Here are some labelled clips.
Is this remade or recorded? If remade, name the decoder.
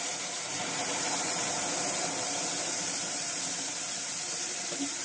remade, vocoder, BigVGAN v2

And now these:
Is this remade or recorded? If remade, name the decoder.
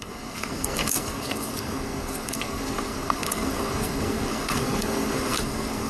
remade, codec, SNAC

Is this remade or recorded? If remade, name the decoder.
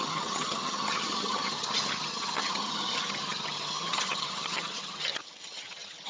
remade, vocoder, HiFi-GAN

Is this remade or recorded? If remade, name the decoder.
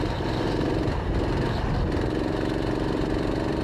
recorded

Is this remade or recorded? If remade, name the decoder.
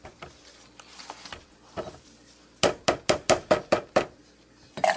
recorded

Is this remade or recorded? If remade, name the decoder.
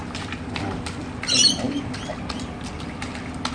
recorded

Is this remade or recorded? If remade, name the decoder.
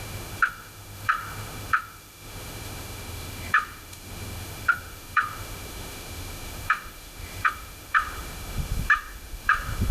remade, autoencoder, DAC-VAE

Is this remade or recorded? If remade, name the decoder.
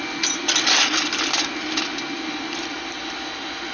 recorded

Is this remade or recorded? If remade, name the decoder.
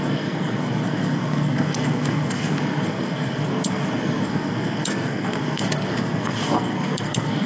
remade, codec, SNAC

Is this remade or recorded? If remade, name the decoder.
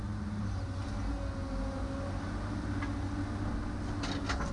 recorded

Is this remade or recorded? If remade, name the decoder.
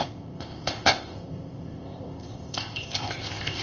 remade, codec, ZipCodec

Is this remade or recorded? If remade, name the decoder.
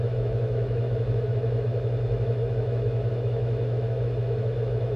remade, autoencoder, DAC-VAE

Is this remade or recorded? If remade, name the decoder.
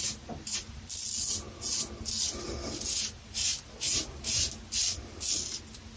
recorded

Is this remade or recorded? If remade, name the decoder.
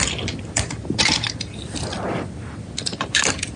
recorded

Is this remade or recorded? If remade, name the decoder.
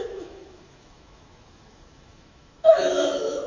remade, autoencoder, DAC-VAE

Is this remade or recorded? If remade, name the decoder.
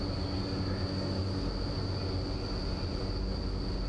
recorded